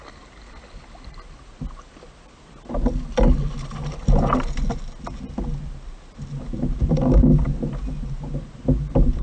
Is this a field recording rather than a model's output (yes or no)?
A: yes